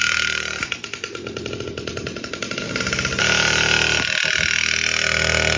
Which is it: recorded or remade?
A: recorded